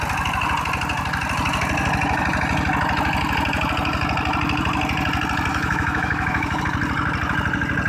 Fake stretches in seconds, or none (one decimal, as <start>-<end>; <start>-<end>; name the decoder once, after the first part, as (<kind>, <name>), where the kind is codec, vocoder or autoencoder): 5.5-6.6 (autoencoder, DAC-VAE)